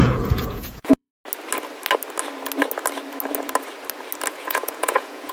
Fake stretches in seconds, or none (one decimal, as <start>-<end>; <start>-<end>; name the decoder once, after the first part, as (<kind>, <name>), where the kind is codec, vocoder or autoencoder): 0.0-1.1 (vocoder, Vocos); 4.3-5.3